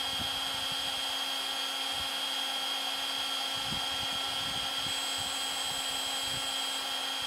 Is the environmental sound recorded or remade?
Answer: recorded